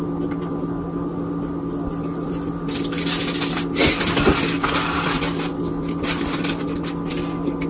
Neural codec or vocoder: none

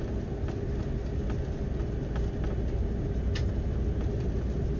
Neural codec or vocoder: none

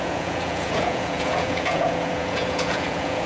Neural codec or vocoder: vocoder, Vocos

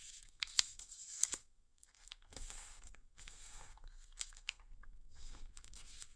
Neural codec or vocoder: codec, SNAC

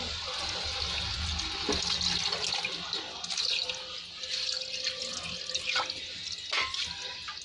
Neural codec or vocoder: none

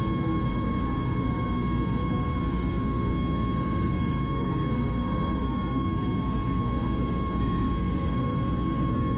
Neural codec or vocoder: codec, SNAC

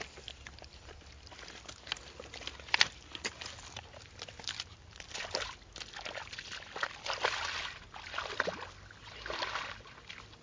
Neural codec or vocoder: none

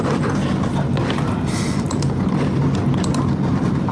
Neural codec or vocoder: none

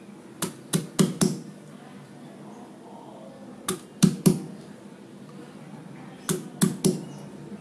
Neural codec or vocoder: none